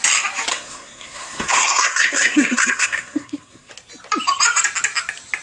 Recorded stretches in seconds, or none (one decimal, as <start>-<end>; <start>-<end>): 0.0-0.5; 3.7-5.4